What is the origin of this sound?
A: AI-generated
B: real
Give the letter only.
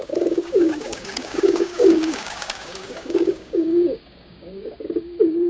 A